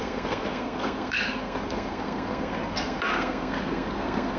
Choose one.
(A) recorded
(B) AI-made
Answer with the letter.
B